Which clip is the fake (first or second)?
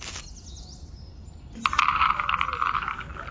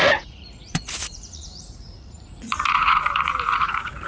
second